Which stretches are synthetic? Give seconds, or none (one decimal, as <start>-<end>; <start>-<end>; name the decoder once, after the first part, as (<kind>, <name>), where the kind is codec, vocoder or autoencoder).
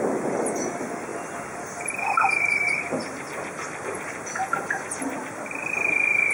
1.1-4.9 (vocoder, BigVGAN v2)